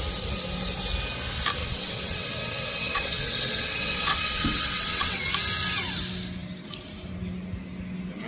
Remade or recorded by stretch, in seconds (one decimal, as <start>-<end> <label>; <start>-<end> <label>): 0.0-1.6 recorded; 1.6-5.3 remade; 5.3-8.3 recorded